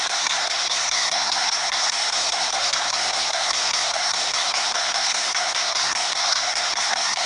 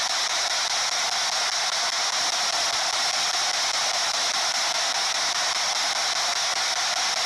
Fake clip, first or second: first